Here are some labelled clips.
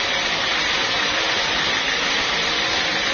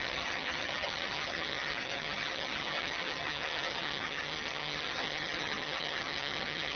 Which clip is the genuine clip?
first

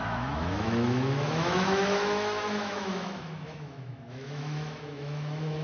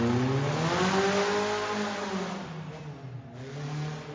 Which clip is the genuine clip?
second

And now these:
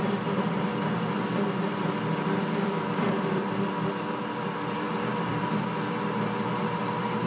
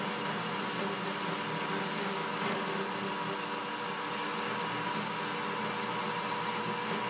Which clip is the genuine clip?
second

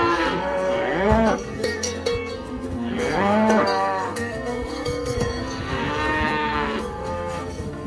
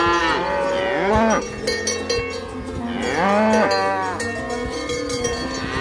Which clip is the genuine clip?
second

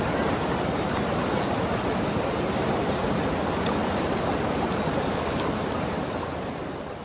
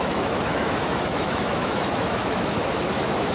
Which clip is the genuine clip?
first